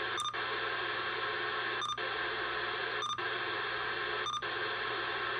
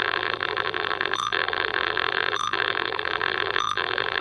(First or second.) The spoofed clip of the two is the second